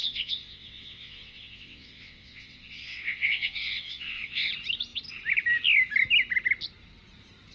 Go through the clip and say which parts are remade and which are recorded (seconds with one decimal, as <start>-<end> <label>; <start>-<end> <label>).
0.0-4.5 remade; 4.5-7.5 recorded